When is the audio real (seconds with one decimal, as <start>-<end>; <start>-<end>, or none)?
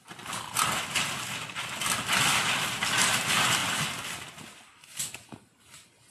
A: 0.0-6.1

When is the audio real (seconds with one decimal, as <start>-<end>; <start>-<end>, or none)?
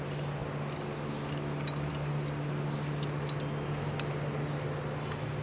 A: 0.0-5.4